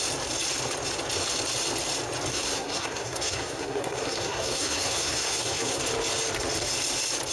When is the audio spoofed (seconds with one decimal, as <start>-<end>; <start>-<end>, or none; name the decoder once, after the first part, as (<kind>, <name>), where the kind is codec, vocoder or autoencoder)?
2.3-5.8 (codec, SNAC)